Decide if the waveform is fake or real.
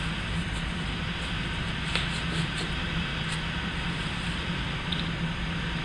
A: real